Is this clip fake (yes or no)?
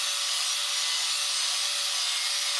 no